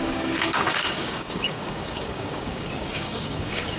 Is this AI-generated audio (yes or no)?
yes